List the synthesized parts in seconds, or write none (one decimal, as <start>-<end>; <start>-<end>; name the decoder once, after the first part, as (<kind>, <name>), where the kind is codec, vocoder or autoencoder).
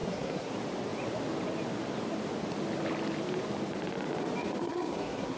0.0-0.5 (codec, SNAC); 4.6-5.4